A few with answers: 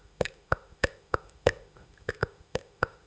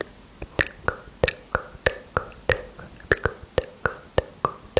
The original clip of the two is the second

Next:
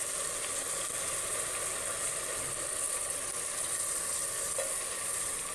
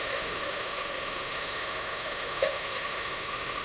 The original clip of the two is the first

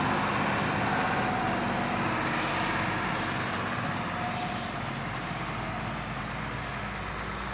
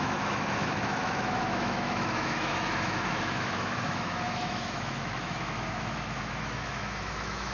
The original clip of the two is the first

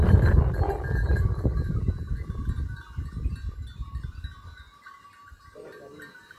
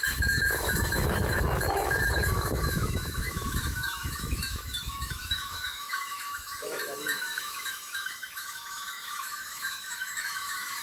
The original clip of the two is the first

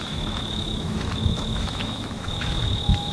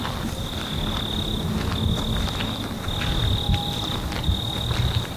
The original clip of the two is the second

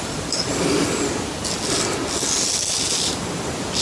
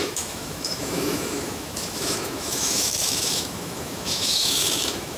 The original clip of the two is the first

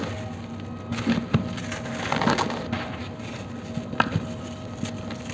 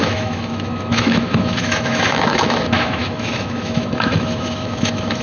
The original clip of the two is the first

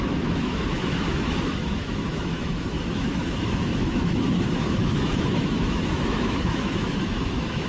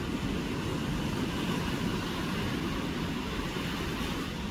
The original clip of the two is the second